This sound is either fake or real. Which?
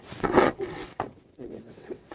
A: fake